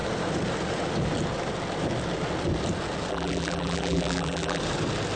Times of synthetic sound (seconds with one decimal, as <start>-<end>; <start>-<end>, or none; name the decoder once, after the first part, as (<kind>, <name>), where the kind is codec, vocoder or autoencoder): 3.1-4.6 (vocoder, BigVGAN v2)